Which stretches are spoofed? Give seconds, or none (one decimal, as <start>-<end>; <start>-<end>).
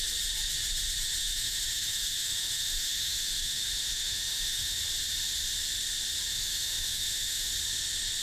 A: 1.2-4.8; 6.3-7.5